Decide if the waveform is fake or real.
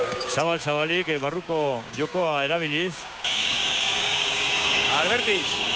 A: fake